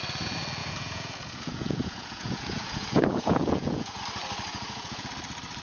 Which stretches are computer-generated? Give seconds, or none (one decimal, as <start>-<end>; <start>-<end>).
0.6-4.0; 4.5-5.1